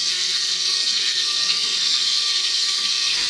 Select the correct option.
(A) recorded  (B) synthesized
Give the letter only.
B